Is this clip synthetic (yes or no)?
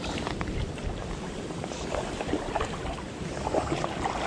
yes